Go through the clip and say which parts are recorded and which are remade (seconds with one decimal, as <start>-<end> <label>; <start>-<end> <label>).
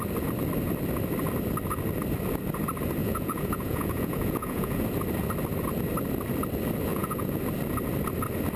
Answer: 0.0-3.0 recorded; 3.0-4.8 remade; 4.8-6.9 recorded; 6.9-7.4 remade; 7.4-8.6 recorded